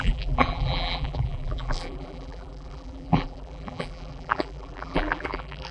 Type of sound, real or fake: fake